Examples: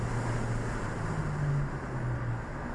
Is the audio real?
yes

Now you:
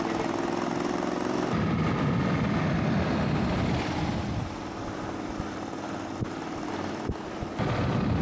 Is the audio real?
yes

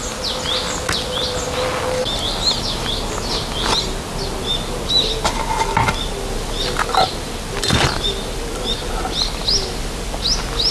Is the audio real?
yes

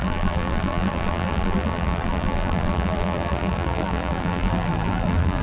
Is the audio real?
no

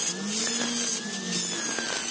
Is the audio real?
yes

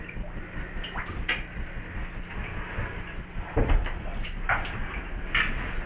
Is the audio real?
yes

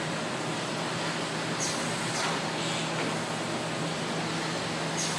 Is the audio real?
yes